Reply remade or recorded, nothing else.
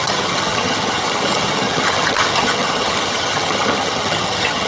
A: remade